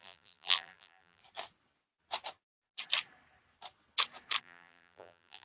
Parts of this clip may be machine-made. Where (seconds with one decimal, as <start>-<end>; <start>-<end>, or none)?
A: 0.0-1.2; 4.4-5.4